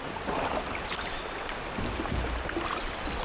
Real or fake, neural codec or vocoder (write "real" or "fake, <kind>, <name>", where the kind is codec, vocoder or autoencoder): real